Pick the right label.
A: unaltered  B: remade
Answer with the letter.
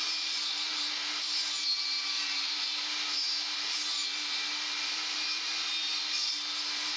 B